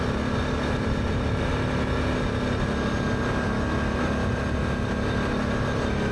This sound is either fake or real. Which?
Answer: real